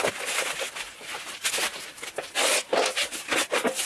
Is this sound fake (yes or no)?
no